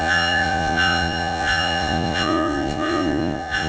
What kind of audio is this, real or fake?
fake